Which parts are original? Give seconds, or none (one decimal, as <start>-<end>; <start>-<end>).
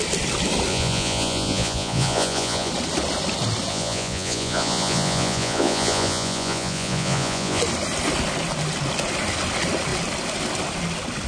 0.0-0.7; 2.7-3.7; 7.6-11.3